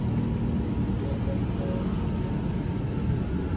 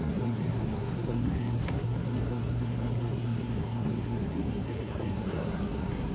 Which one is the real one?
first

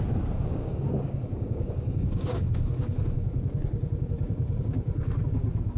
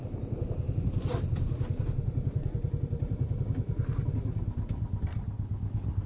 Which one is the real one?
second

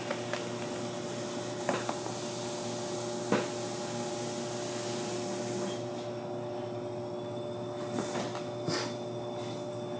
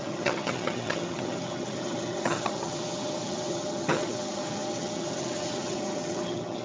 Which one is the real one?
first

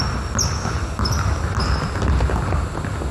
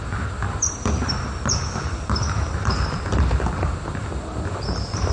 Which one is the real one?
first